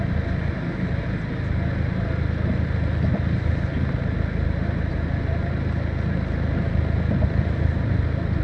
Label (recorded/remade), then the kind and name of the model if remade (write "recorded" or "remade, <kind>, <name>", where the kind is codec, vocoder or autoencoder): recorded